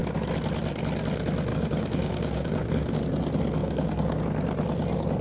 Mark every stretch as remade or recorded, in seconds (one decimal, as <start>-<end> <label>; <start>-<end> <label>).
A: 0.0-1.5 recorded; 1.5-3.0 remade; 3.0-3.6 recorded; 3.6-4.2 remade; 4.2-5.2 recorded

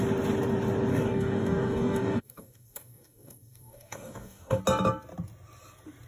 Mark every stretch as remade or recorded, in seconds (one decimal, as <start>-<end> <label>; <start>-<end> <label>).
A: 0.0-0.9 recorded; 0.9-4.6 remade; 4.6-6.1 recorded

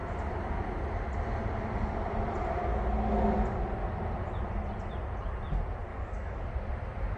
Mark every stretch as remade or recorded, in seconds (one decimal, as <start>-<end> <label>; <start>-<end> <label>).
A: 0.0-5.9 recorded; 5.9-6.5 remade; 6.5-7.2 recorded

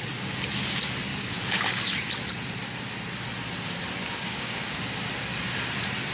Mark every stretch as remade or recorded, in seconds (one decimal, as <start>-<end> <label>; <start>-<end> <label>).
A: 0.0-1.1 recorded; 1.1-1.7 remade; 1.7-4.0 recorded; 4.0-4.8 remade; 4.8-6.1 recorded

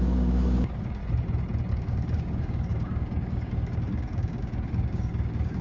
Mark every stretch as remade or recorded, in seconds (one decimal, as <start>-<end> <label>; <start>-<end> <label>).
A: 0.0-1.0 remade; 1.0-1.7 recorded; 1.7-5.6 remade